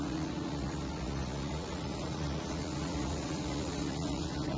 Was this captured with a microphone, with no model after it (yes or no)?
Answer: no